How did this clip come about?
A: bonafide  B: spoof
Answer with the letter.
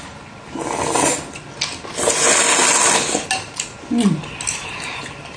A